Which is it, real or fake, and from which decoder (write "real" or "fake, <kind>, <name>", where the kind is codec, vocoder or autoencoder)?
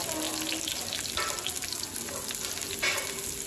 real